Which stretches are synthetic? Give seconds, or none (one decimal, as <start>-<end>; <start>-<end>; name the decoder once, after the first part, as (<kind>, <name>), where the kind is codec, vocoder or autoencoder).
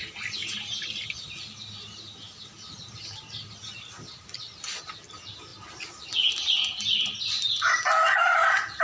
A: none